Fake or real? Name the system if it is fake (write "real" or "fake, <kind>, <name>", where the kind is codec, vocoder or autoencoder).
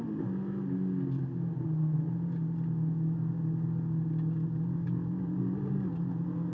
real